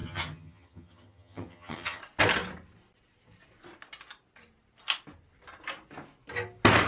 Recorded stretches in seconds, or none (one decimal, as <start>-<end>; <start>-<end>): 2.0-6.9